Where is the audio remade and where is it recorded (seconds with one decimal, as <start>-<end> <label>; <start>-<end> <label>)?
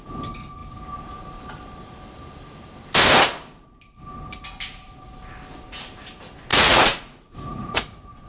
0.0-6.5 recorded; 6.5-8.3 remade